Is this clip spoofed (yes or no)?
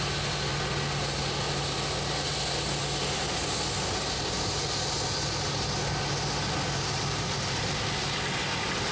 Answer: no